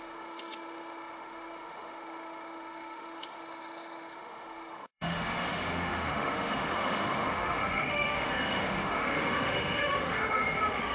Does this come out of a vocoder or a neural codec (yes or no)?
yes